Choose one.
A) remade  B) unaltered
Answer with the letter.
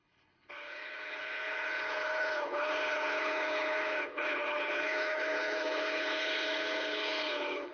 A